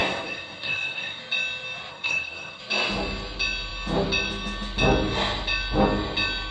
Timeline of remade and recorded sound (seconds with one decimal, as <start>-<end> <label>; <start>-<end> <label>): 0.0-1.2 remade; 1.2-1.9 recorded; 1.9-2.6 remade; 2.6-6.5 recorded